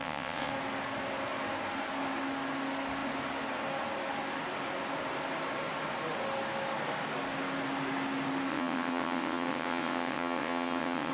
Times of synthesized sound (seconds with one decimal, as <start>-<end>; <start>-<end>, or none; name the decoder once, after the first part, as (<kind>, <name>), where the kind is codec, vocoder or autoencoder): 0.0-0.5 (vocoder, WaveNeXt); 8.5-11.1